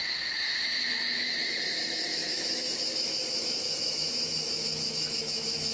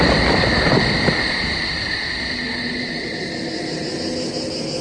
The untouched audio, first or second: second